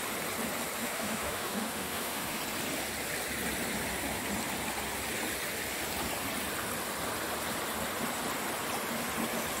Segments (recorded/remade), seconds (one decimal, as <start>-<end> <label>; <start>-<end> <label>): 0.0-0.8 recorded; 0.8-2.4 remade; 2.4-9.6 recorded